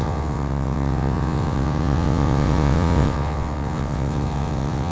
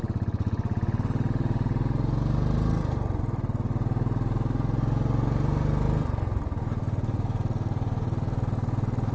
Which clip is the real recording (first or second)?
second